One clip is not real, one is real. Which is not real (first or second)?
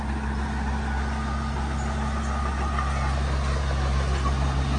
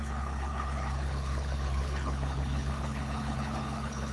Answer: second